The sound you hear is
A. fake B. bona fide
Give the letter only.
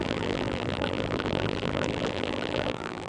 A